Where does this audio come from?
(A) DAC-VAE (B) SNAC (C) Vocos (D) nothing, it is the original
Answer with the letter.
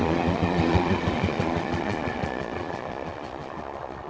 C